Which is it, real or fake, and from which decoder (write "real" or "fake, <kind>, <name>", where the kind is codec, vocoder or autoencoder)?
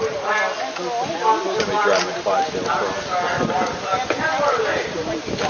real